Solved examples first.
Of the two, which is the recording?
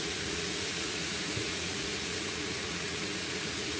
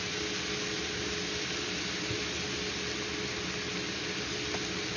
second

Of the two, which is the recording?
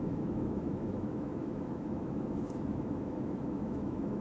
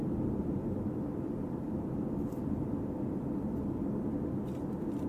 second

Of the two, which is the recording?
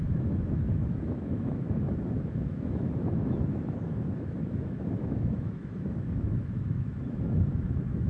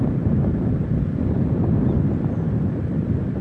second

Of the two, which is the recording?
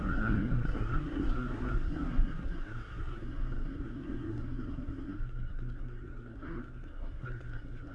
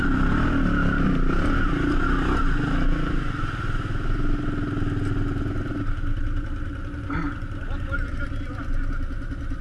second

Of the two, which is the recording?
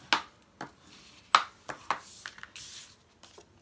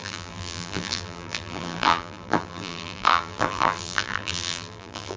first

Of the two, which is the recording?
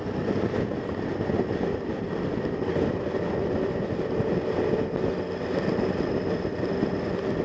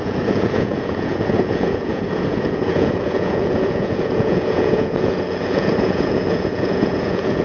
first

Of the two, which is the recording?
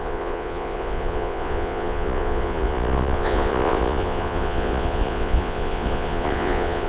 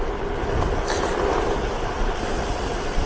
second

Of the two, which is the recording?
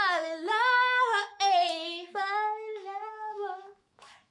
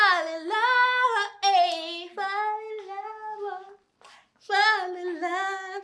second